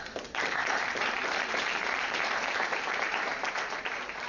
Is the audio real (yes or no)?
no